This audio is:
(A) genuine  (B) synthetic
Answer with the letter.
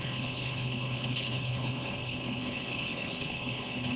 B